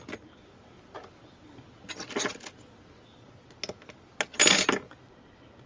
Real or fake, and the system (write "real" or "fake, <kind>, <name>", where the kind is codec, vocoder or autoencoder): real